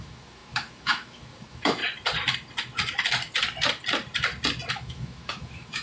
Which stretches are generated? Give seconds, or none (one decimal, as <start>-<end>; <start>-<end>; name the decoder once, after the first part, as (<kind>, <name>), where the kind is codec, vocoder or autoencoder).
0.0-1.8 (autoencoder, DAC-VAE); 4.7-5.8